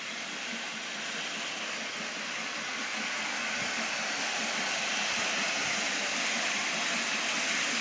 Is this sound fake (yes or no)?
yes